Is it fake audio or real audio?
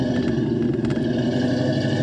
real